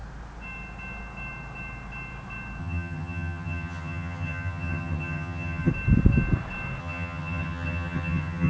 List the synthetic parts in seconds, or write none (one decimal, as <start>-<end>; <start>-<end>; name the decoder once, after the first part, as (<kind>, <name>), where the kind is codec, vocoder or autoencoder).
2.6-5.7 (vocoder, HiFi-GAN); 6.8-8.5